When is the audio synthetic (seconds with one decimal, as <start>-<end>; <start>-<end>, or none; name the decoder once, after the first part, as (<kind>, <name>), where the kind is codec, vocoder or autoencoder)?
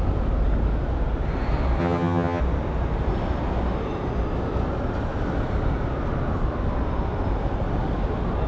1.8-2.4 (vocoder, HiFi-GAN)